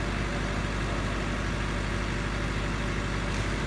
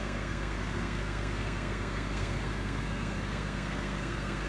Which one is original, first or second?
first